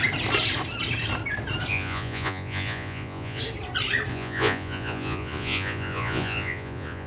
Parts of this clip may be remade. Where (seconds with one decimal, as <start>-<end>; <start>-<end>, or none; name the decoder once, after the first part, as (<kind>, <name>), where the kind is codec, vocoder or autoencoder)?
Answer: 1.7-3.4 (vocoder, Vocos); 4.1-7.1